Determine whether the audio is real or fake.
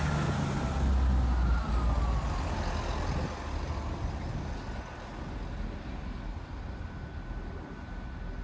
real